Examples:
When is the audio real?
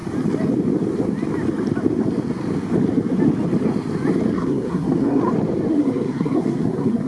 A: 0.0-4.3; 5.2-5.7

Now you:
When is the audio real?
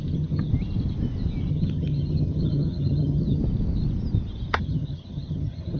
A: 0.5-1.5; 3.4-4.5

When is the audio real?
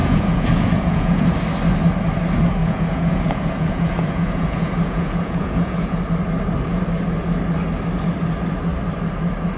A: 1.2-2.6; 6.0-9.6